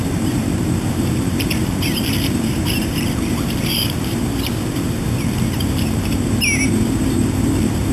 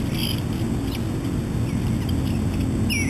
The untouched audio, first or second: second